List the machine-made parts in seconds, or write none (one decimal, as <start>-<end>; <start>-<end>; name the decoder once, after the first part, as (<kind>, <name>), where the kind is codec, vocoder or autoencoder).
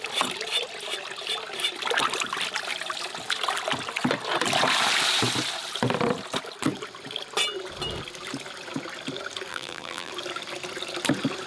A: 9.5-10.1 (vocoder, BigVGAN v2)